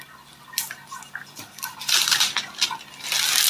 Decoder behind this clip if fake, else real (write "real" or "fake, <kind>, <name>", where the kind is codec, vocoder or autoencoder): real